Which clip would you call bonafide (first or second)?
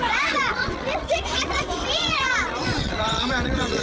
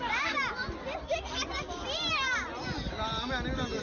second